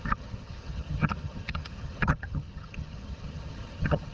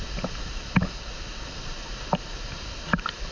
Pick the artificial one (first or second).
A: first